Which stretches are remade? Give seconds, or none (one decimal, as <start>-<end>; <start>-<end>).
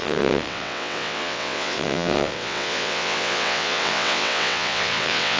0.0-5.4